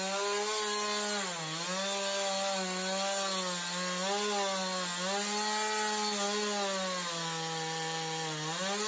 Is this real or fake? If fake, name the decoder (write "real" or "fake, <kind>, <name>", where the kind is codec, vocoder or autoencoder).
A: real